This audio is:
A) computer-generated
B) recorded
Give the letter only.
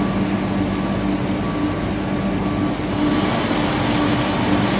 B